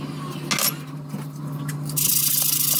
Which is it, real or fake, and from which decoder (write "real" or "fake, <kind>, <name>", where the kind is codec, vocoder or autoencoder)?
real